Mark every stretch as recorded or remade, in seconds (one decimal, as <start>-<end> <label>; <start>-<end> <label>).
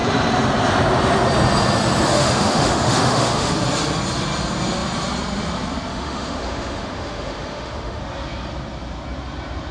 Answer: 0.0-2.1 recorded; 2.1-3.5 remade; 3.5-5.9 recorded; 5.9-8.0 remade; 8.0-9.7 recorded